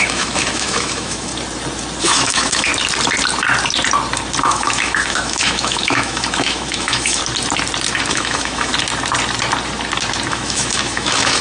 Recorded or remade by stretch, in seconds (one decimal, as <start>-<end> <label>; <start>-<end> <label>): 0.0-1.3 remade; 1.3-2.0 recorded; 2.0-2.7 remade; 2.7-4.4 recorded; 4.4-7.2 remade; 7.2-8.1 recorded; 8.1-8.7 remade; 8.7-10.3 recorded; 10.3-11.4 remade